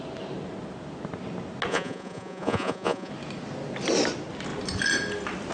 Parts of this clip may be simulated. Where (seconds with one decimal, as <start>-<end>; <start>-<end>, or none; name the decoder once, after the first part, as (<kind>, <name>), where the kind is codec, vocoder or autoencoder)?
1.7-3.1 (vocoder, Vocos)